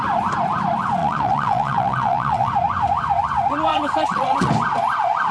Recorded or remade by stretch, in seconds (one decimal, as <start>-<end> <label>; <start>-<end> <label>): 0.0-1.0 recorded; 1.0-2.5 remade; 2.5-3.7 recorded; 3.7-4.5 remade; 4.5-5.3 recorded